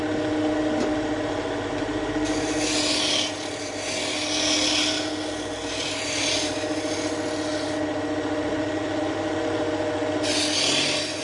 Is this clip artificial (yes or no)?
no